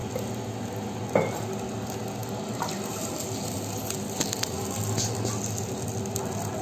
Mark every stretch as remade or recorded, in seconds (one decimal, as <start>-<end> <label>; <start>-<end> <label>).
0.0-6.6 recorded